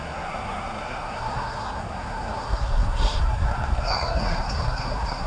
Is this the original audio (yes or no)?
no